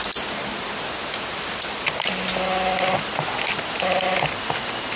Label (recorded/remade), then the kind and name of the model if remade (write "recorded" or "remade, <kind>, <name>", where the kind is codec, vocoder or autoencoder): recorded